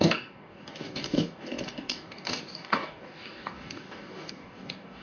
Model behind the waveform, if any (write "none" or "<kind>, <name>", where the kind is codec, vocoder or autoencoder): codec, DAC